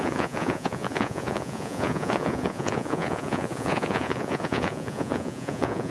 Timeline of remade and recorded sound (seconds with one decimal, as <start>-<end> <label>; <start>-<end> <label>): 0.0-5.9 remade